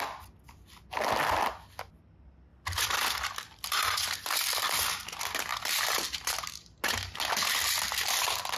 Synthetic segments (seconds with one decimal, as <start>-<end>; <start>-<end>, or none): 2.5-4.7